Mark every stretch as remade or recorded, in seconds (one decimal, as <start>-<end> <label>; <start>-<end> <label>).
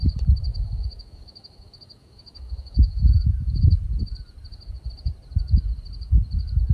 0.0-0.5 recorded; 0.5-3.6 remade; 3.6-6.7 recorded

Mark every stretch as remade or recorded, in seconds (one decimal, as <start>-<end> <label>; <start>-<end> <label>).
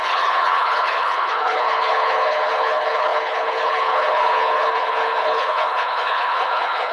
0.0-6.9 remade